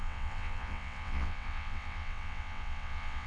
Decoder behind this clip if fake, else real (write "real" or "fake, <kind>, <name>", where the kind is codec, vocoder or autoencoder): fake, vocoder, WaveNeXt